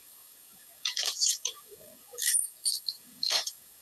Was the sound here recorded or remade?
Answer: remade